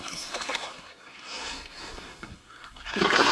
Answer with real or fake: fake